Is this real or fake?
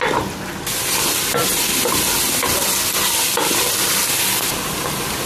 real